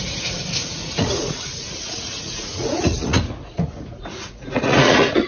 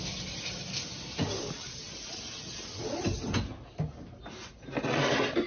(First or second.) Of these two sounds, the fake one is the first